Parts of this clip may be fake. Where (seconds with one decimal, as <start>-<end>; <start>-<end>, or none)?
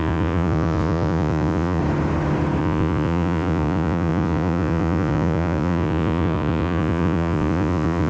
0.0-1.8; 2.6-8.1